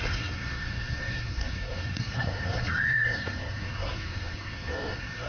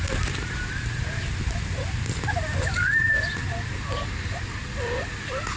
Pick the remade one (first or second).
first